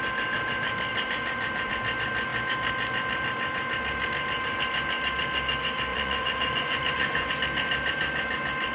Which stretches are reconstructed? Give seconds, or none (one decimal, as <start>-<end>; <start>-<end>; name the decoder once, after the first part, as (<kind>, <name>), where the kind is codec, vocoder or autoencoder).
5.9-7.3 (vocoder, Vocos)